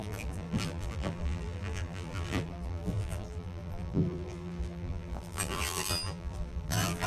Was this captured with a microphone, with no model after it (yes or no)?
no